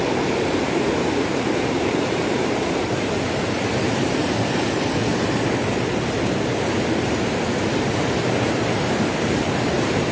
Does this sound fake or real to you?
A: fake